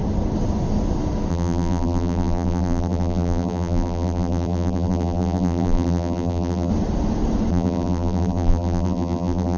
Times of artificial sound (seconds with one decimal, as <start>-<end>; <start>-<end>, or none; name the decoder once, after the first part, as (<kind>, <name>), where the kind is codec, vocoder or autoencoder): 1.3-6.7 (vocoder, BigVGAN v2); 7.5-9.6